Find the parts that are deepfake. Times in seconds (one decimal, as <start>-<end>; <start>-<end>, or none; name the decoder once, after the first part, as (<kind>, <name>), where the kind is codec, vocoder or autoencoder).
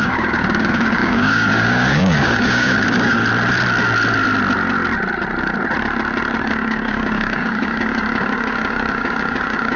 0.0-3.2 (codec, DAC); 6.4-9.8